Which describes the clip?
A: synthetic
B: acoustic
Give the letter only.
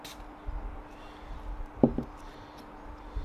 B